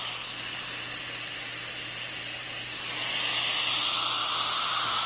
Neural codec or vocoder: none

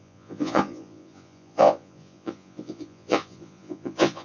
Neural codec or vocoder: vocoder, Vocos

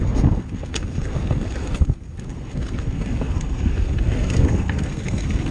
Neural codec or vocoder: codec, SNAC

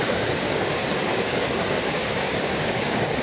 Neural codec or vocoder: codec, DAC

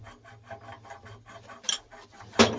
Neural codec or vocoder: none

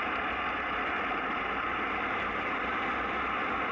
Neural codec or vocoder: none